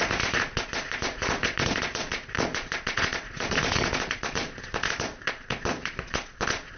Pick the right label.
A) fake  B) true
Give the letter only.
A